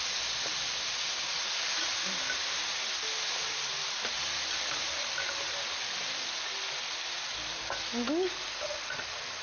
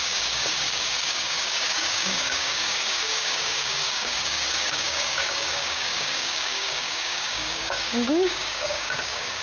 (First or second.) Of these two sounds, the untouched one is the first